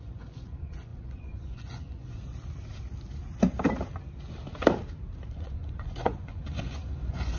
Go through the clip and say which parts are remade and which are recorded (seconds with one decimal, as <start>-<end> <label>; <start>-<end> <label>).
0.0-2.2 remade; 2.2-5.3 recorded; 5.3-7.4 remade